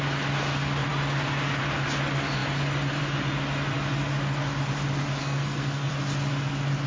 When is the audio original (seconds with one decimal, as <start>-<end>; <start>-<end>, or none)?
0.0-5.2; 5.9-6.9

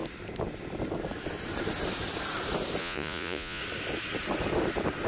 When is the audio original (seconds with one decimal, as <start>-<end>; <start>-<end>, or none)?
0.0-2.8; 3.6-5.1

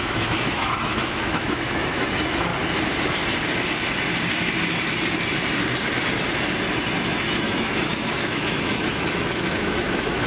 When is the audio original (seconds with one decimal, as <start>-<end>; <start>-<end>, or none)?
2.5-7.0

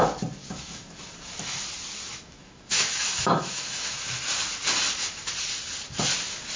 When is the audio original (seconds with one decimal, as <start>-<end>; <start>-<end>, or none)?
0.0-0.4; 1.1-2.1; 4.2-6.6

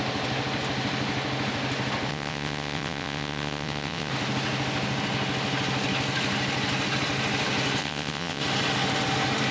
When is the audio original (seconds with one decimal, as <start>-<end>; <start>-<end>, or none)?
0.0-2.1; 4.1-7.8; 8.4-9.5

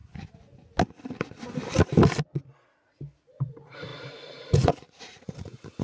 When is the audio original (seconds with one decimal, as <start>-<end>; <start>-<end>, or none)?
0.0-3.5